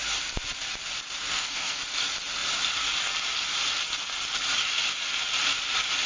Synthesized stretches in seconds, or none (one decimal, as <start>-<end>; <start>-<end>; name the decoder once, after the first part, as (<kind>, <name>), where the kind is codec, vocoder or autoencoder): 1.3-1.8 (codec, SNAC)